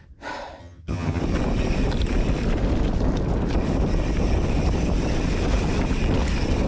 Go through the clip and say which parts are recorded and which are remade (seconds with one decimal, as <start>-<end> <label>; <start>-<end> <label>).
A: 0.0-0.6 recorded; 0.6-1.2 remade; 1.2-6.7 recorded